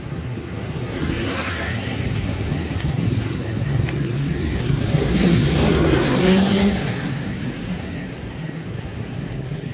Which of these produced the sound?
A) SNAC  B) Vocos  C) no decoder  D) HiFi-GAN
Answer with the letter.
A